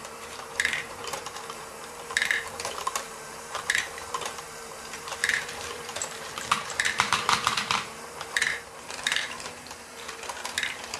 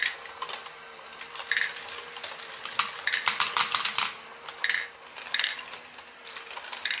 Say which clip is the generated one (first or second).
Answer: first